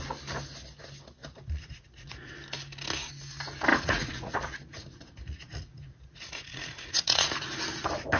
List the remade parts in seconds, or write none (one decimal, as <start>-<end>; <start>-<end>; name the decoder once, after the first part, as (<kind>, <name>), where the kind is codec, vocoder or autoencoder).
1.2-2.3 (vocoder, Vocos); 3.7-7.3